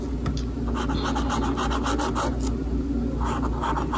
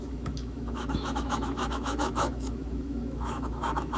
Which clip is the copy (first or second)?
second